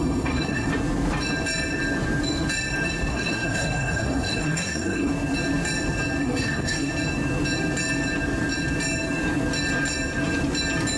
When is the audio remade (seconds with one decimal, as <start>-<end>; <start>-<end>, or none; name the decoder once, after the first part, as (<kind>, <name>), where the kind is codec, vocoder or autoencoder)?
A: 0.0-0.7 (codec, SNAC); 3.1-5.1; 6.2-6.9